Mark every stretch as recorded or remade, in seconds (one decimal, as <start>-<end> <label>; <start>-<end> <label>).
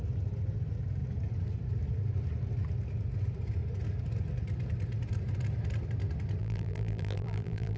0.0-6.4 recorded; 6.4-7.8 remade